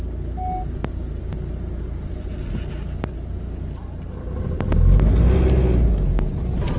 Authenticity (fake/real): real